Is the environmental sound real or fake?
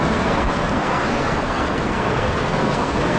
fake